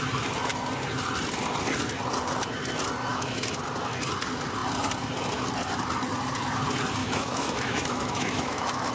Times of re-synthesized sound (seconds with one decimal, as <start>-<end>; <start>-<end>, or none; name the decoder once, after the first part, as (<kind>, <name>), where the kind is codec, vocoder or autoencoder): 3.1-3.6 (autoencoder, DAC-VAE); 7.0-8.9